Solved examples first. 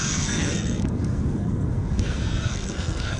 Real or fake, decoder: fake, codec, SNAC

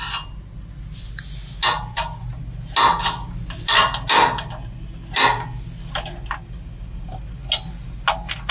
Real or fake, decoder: real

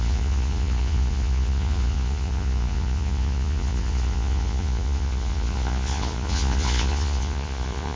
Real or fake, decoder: fake, vocoder, Vocos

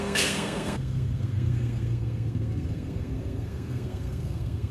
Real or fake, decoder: fake, codec, SNAC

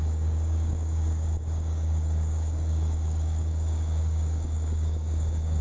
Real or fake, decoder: fake, codec, DAC